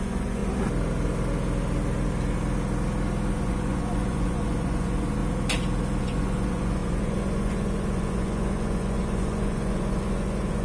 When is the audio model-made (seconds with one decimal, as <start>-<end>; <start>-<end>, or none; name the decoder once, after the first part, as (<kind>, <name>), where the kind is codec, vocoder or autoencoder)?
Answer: 0.0-0.4 (vocoder, Vocos); 3.3-5.2; 6.0-10.6